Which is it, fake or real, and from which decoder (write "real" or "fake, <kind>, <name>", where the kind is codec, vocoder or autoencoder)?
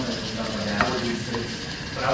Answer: real